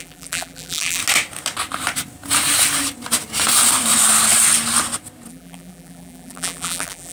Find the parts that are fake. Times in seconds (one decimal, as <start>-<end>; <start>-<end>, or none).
0.0-1.0; 5.3-7.1